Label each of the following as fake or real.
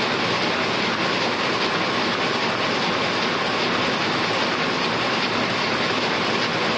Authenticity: real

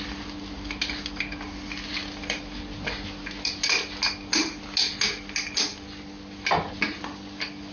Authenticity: real